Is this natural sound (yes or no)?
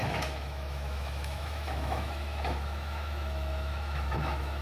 no